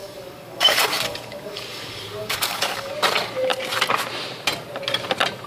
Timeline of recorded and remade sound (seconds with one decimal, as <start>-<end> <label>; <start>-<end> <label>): 0.0-2.9 remade; 2.9-5.5 recorded